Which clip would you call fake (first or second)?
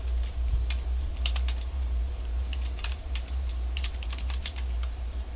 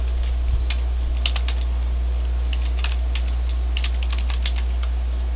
first